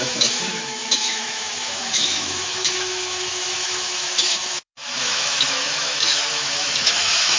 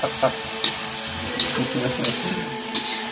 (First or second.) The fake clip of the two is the first